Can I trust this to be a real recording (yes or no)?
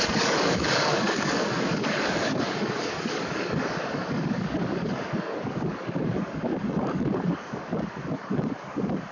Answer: no